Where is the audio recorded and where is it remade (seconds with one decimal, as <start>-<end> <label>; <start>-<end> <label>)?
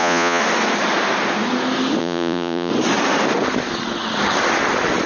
0.0-0.4 remade; 0.4-2.0 recorded; 2.0-2.7 remade; 2.7-5.1 recorded